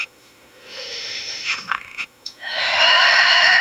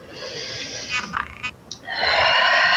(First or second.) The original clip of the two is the second